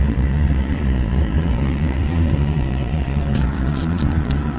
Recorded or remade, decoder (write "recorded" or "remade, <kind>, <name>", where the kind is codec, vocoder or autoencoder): remade, vocoder, Vocos